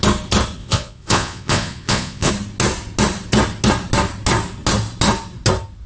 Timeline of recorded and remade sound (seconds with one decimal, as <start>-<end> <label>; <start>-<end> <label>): 0.0-0.6 recorded; 0.6-2.3 remade; 2.3-5.9 recorded